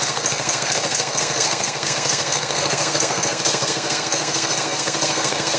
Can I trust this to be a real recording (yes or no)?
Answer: no